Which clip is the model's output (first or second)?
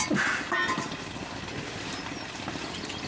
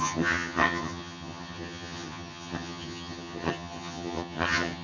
second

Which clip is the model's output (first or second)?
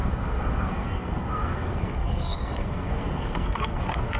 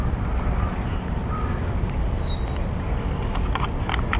first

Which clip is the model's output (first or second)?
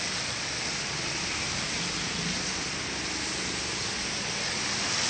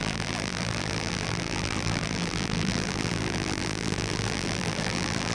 second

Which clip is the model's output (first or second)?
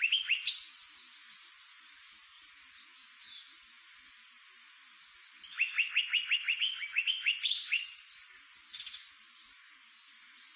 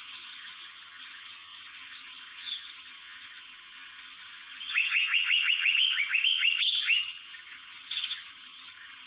second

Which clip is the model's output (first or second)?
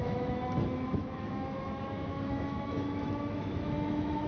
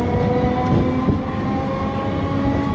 first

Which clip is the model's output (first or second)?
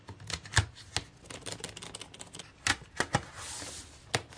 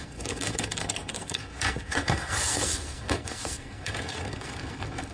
second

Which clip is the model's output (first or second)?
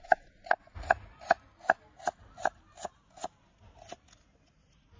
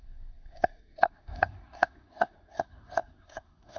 second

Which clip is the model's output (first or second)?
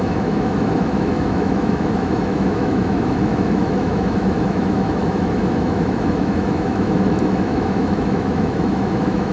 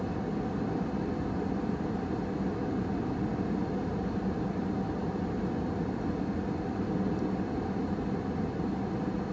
first